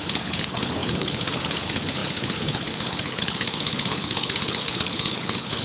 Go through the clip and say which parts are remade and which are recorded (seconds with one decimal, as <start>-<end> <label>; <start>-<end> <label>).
0.0-5.6 remade